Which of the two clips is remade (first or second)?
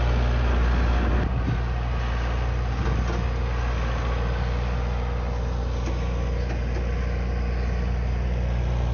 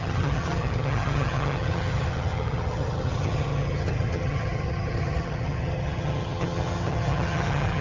second